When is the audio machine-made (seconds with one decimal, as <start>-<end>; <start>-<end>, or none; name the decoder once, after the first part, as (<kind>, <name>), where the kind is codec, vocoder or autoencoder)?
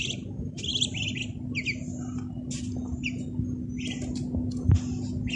none